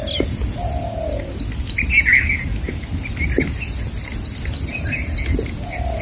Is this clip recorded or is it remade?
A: recorded